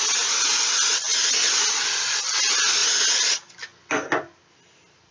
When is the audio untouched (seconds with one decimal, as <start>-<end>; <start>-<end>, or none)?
0.0-5.1